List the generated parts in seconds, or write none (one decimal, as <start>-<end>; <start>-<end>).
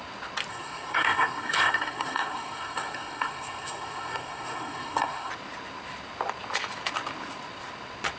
0.5-5.3